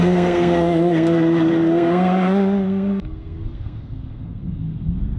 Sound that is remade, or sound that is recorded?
remade